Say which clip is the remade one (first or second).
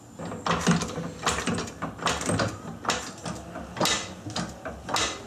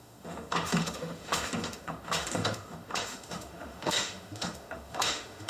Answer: second